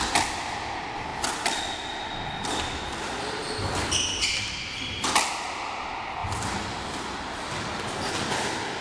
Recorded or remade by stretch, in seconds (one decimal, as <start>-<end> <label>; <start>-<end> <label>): 0.0-8.8 recorded